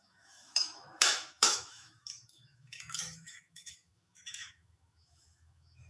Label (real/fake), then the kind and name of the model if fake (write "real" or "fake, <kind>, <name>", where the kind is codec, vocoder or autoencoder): fake, autoencoder, DAC-VAE